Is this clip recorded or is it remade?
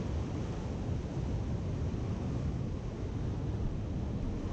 recorded